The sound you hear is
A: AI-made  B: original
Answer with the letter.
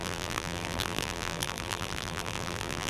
A